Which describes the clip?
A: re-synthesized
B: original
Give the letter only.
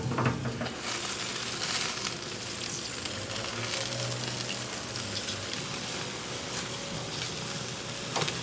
B